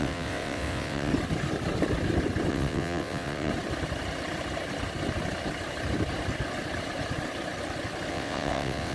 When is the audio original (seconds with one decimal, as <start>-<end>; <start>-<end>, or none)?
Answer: 1.1-2.5; 3.5-8.1

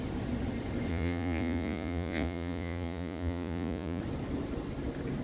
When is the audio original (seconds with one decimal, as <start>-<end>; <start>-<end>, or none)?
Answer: 0.0-0.9; 4.0-5.2

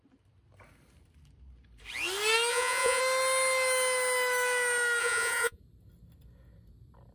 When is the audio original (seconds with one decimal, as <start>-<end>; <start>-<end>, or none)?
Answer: 0.0-2.5; 3.0-5.0; 5.6-7.1

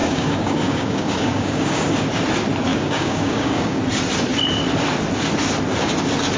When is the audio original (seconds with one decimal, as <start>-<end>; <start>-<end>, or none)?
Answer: 1.8-2.7; 3.8-6.4

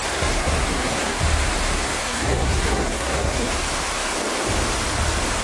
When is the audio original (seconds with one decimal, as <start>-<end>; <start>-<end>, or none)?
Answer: 1.2-2.0; 3.5-5.4